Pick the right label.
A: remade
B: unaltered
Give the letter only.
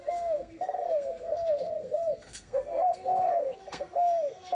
A